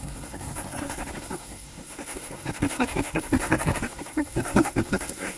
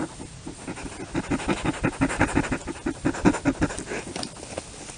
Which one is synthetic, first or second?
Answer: first